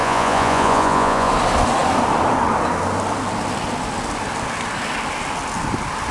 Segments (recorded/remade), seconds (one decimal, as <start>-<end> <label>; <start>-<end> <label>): 0.0-1.3 remade; 1.3-6.1 recorded